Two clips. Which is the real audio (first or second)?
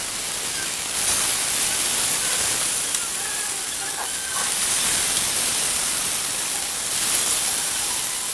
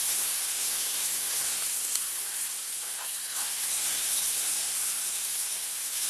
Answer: first